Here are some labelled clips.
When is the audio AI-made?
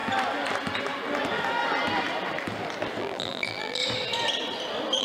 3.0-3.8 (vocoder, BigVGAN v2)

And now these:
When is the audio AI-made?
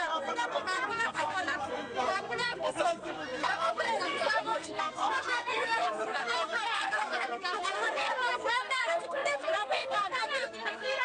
0.0-11.0 (codec, SNAC)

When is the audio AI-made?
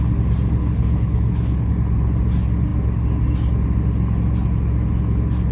0.6-1.7 (codec, HILCodec)